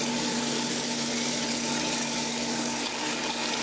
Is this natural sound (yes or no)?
no